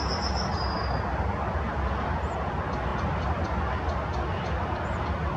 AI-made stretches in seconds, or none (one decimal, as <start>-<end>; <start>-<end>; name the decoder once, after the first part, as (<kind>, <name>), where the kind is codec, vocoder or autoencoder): none